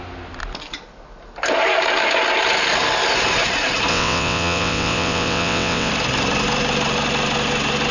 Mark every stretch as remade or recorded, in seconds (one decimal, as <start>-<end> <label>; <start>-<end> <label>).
0.0-3.9 recorded; 3.9-5.9 remade; 5.9-7.9 recorded